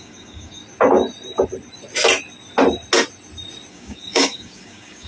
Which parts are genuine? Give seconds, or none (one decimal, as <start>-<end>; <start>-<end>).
0.6-3.7